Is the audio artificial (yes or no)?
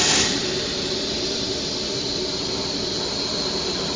yes